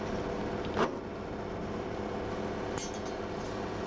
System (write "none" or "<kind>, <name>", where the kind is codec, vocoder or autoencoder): none